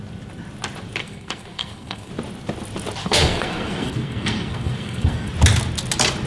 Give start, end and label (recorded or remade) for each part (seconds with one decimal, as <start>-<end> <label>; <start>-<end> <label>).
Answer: 0.0-1.0 recorded; 1.0-2.1 remade; 2.1-3.0 recorded; 3.0-5.3 remade; 5.3-6.3 recorded